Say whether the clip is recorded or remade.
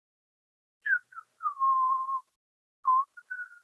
recorded